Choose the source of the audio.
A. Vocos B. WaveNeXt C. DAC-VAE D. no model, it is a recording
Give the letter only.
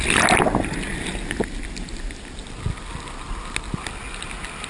D